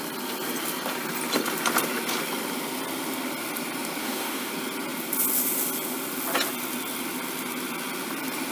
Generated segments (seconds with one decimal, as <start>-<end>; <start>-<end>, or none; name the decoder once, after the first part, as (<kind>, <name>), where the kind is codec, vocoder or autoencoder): 4.0-4.5 (codec, DAC)